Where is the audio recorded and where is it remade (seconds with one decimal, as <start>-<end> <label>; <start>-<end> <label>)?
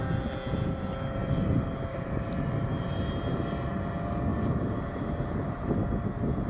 0.0-1.2 recorded; 1.2-3.9 remade; 3.9-4.3 recorded; 4.3-5.8 remade; 5.8-6.5 recorded